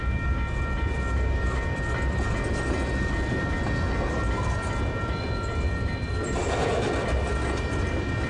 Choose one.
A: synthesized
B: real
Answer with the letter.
B